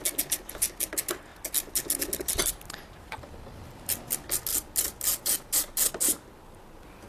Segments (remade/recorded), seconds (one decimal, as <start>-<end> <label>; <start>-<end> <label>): 0.0-7.1 recorded